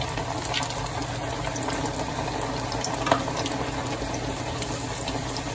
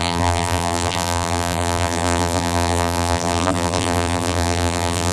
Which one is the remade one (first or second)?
second